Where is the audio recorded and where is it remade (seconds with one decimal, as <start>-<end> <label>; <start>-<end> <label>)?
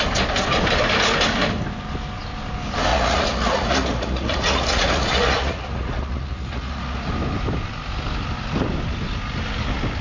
0.0-2.9 recorded; 2.9-7.1 remade; 7.1-10.0 recorded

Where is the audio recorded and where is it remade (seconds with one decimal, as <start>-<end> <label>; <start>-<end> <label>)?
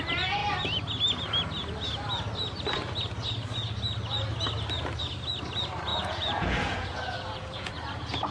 0.0-5.9 recorded; 5.9-7.7 remade; 7.7-8.3 recorded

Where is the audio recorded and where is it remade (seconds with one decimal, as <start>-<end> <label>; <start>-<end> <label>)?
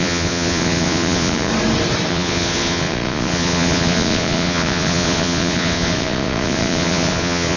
0.0-1.5 remade; 1.5-2.1 recorded; 2.1-7.6 remade